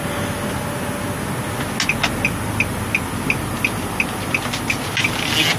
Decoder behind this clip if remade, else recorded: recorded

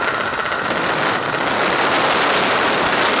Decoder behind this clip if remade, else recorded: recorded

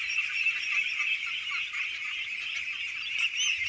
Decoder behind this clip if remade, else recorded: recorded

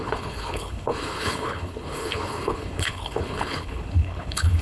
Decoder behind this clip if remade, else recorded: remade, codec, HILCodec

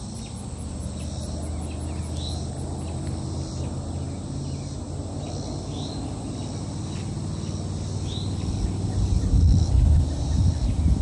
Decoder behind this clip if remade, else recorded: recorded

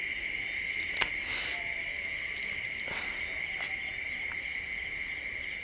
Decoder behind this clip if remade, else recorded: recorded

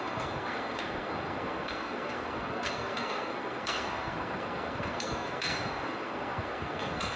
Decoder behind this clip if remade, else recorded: remade, codec, SNAC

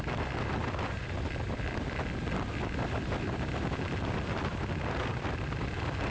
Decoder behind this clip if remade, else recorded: remade, vocoder, BigVGAN v2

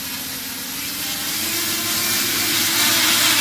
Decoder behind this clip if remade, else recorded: recorded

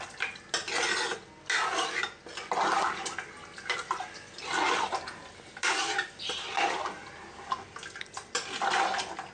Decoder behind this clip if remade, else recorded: recorded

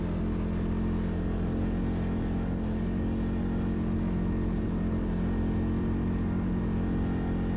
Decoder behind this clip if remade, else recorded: recorded